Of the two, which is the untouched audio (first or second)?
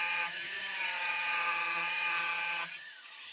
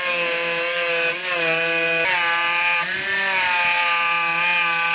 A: second